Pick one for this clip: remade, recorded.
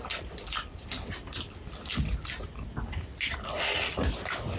recorded